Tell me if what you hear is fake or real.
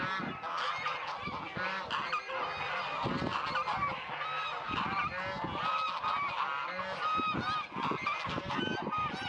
real